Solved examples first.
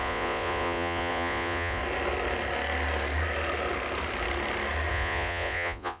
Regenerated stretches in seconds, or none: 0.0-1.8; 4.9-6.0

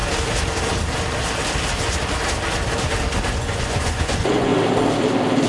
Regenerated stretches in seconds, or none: 3.3-4.5

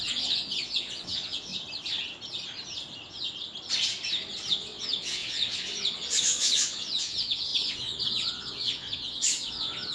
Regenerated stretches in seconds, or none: 0.0-1.5; 4.5-9.9

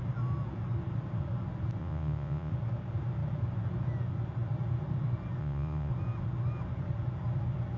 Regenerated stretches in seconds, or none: 1.8-2.5; 5.4-5.9

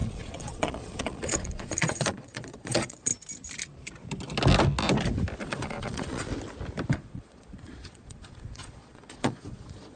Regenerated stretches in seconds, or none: 0.0-3.1; 5.4-6.3; 6.9-10.0

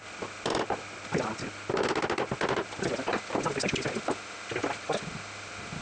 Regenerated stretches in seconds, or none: none

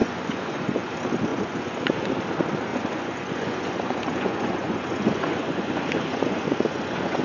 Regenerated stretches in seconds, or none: 0.0-0.9; 1.3-2.1; 2.7-7.2

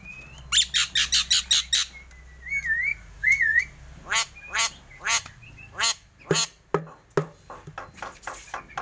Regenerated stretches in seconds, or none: 2.9-3.6